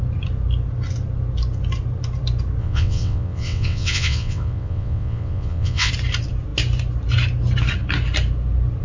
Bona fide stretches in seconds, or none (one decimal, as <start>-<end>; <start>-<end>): 0.0-2.6; 5.9-8.8